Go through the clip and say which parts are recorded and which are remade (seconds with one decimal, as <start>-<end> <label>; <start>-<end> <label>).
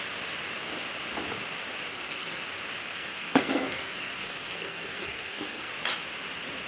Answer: 0.0-1.9 recorded; 1.9-2.4 remade; 2.4-2.8 recorded; 2.8-5.7 remade; 5.7-6.7 recorded